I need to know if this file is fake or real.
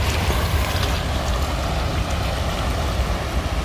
real